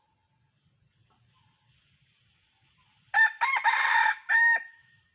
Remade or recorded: remade